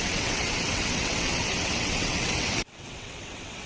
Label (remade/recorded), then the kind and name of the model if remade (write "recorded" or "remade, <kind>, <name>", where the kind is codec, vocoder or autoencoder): remade, vocoder, WaveNeXt